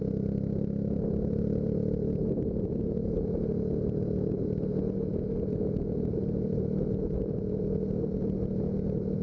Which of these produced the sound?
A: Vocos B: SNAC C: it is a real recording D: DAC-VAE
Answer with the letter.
C